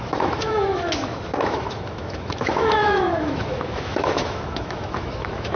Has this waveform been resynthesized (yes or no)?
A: yes